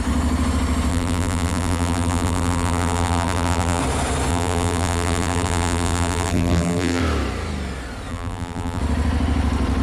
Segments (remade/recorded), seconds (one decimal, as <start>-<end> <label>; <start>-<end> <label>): 0.0-0.9 recorded; 0.9-3.8 remade; 3.8-4.3 recorded; 4.3-7.0 remade; 7.0-8.1 recorded; 8.1-8.8 remade; 8.8-9.8 recorded